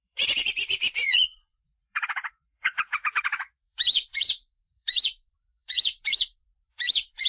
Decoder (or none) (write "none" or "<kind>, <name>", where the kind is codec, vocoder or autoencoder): vocoder, Vocos